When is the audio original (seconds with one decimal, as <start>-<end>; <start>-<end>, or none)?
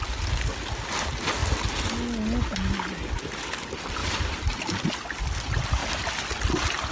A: 0.0-4.0; 4.7-6.9